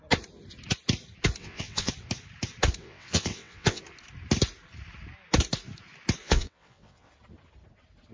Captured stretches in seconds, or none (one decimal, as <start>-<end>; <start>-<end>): 0.0-1.4; 1.9-2.8; 3.8-6.2; 7.1-8.1